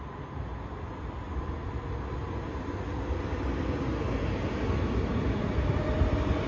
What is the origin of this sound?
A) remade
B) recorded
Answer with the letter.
B